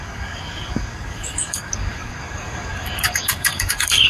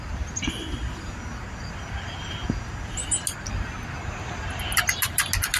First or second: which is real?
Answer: second